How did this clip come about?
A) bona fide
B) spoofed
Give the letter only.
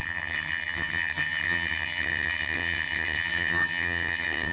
B